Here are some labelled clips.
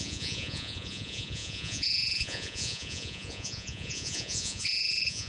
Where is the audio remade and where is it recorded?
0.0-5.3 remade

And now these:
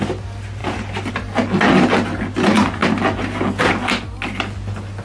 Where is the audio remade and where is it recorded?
0.0-5.0 recorded

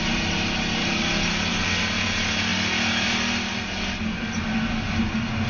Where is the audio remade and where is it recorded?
0.0-5.5 recorded

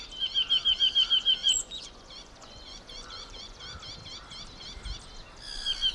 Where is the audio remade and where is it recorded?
0.0-1.4 recorded; 1.4-3.6 remade; 3.6-5.9 recorded

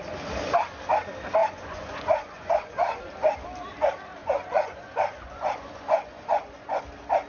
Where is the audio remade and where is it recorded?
0.0-1.4 recorded; 1.4-3.1 remade; 3.1-4.2 recorded; 4.2-6.8 remade; 6.8-7.3 recorded

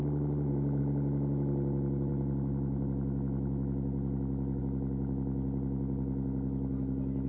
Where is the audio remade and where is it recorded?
0.0-7.3 recorded

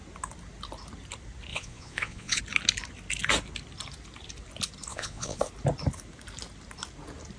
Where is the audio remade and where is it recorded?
0.0-1.5 recorded; 1.5-2.4 remade; 2.4-4.9 recorded; 4.9-5.4 remade; 5.4-7.4 recorded